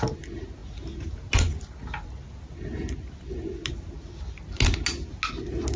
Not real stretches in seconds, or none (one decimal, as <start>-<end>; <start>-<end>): none